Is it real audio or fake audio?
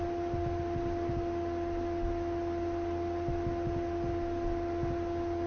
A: real